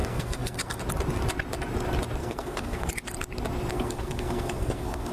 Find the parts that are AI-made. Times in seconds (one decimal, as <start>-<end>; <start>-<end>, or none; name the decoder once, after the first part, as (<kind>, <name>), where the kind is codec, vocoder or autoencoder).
0.0-0.8 (codec, SNAC); 2.2-2.9; 3.7-5.1